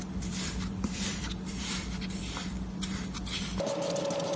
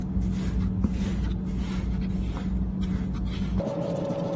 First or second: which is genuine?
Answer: second